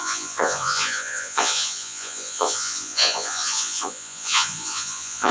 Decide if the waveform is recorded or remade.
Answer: remade